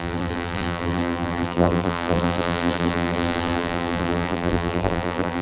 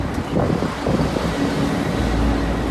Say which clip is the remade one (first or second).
first